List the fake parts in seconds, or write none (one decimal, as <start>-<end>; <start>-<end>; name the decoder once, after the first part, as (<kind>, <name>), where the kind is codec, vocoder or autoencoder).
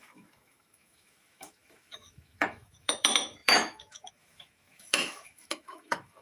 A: 0.0-6.2 (autoencoder, DAC-VAE)